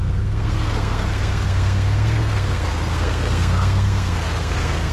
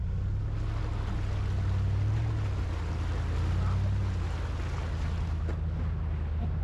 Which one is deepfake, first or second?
first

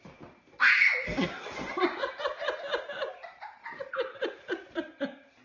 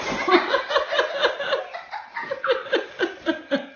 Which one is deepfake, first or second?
first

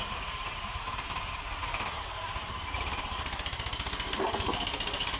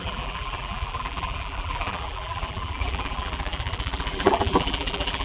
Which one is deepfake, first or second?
second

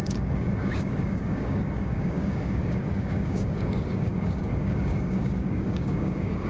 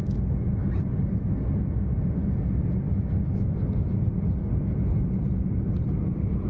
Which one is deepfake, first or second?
first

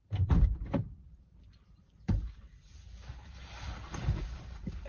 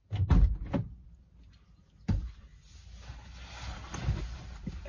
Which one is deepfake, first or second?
first